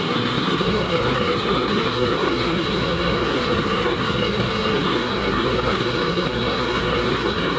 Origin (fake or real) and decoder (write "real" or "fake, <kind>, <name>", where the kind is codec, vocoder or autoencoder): fake, codec, SNAC